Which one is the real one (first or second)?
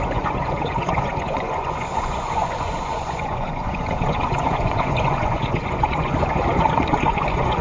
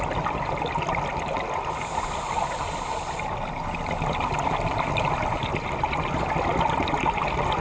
second